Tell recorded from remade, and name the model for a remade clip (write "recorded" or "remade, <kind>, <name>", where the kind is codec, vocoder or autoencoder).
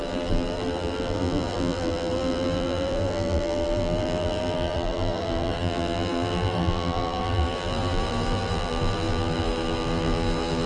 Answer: remade, vocoder, BigVGAN v2